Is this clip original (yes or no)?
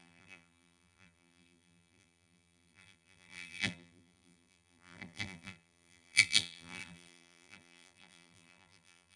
no